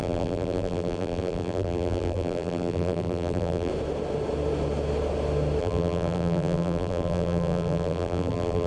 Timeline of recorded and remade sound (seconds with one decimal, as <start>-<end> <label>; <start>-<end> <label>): 0.0-3.7 remade; 3.7-5.6 recorded; 5.6-8.7 remade